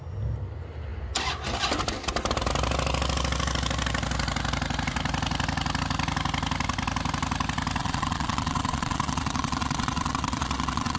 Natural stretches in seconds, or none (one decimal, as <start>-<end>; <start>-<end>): 0.0-7.8